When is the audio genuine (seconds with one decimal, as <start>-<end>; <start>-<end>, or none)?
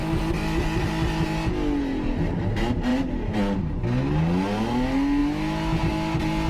0.0-6.5